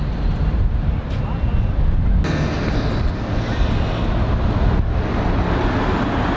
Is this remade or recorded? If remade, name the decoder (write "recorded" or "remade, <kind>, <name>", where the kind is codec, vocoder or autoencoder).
recorded